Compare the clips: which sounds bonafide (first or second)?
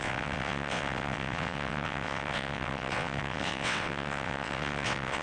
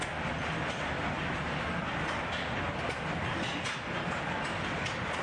second